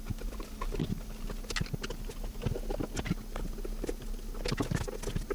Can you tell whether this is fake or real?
real